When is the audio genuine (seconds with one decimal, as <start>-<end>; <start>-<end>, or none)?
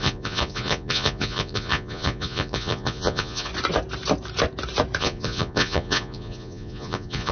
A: 3.5-5.0